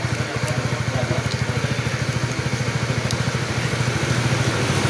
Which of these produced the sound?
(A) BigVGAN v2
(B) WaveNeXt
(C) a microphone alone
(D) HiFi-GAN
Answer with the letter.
C